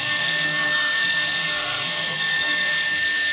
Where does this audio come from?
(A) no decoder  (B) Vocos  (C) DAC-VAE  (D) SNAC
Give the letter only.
D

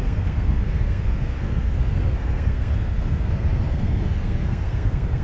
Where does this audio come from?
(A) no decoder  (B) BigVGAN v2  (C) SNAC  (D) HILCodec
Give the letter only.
C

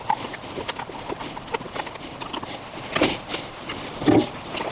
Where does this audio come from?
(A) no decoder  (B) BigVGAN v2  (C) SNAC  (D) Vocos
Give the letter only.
A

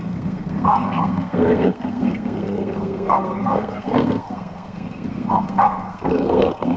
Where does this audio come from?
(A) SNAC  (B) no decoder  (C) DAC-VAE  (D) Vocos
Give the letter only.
A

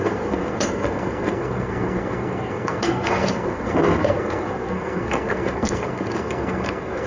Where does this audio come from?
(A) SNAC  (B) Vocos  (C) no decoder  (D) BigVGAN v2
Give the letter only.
A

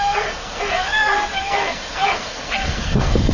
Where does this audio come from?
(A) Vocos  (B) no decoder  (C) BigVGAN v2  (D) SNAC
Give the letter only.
D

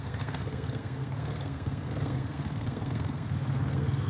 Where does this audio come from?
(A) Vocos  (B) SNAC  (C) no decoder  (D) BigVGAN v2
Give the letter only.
B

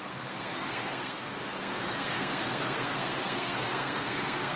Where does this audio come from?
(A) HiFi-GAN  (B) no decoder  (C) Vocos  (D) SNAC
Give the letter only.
D